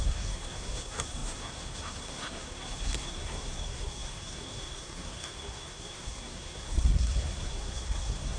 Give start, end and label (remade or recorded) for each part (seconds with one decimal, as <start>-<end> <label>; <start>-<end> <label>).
0.0-8.4 remade